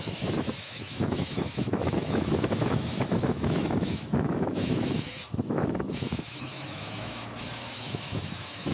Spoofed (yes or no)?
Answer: yes